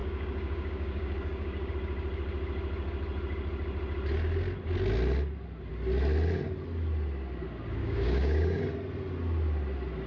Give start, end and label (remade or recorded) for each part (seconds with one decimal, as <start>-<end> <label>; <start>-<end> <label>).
0.0-1.7 remade; 1.7-7.8 recorded; 7.8-8.6 remade; 8.6-10.1 recorded